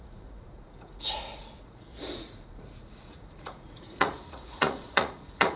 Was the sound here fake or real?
fake